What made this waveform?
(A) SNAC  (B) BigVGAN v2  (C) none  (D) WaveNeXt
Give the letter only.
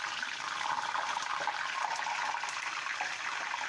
C